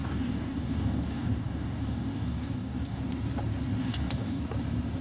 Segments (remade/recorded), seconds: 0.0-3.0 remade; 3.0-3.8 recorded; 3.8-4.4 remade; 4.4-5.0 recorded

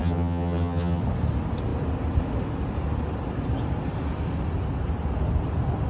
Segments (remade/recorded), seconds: 0.0-1.0 remade; 1.0-5.9 recorded

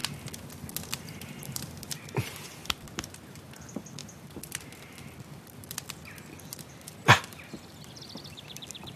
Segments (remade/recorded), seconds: 0.0-0.9 recorded; 0.9-9.0 remade